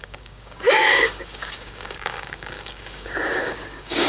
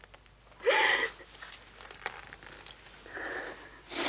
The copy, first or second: first